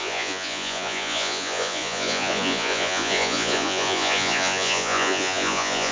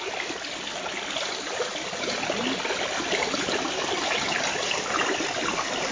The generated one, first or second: first